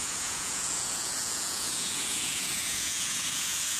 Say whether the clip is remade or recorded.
remade